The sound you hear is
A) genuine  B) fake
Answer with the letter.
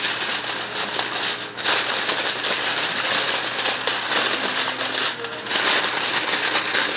A